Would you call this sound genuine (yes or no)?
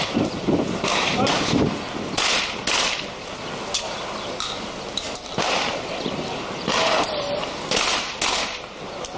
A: yes